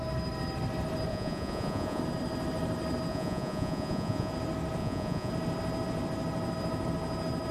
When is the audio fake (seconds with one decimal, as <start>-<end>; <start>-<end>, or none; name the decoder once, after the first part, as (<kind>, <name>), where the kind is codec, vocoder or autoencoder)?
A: 1.1-2.0 (vocoder, Vocos); 3.1-4.3; 4.8-5.3